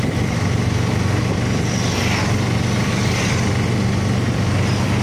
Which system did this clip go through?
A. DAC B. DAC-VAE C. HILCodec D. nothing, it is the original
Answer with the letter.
D